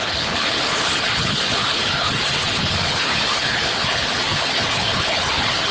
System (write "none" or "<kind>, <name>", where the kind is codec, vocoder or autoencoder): codec, HILCodec